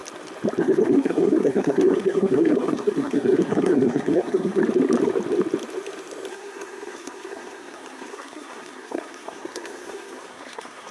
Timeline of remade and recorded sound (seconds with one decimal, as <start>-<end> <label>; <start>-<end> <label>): 0.0-0.6 recorded; 0.6-4.6 remade; 4.6-6.3 recorded; 6.3-10.9 remade